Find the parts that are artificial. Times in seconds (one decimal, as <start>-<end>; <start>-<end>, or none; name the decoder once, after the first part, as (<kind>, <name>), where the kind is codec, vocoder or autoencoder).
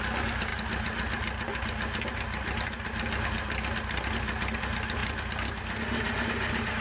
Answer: none